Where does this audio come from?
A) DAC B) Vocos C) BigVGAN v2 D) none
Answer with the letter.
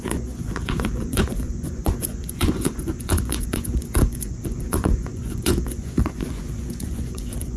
B